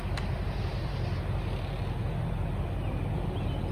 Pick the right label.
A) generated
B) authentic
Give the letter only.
B